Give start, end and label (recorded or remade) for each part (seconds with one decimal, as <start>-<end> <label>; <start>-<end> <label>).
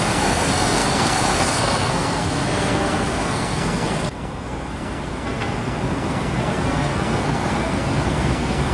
0.0-8.7 remade